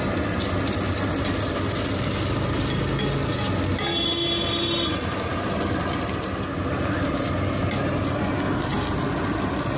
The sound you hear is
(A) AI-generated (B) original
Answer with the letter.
B